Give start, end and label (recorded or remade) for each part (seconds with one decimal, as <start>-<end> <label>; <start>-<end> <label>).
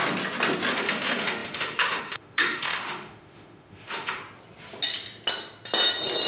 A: 0.0-0.7 recorded; 0.7-4.2 remade; 4.2-6.3 recorded